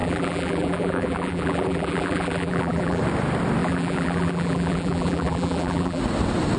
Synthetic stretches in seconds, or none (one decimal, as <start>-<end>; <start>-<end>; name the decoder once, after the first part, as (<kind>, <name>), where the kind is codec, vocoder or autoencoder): 0.0-3.0 (vocoder, BigVGAN v2); 3.6-6.0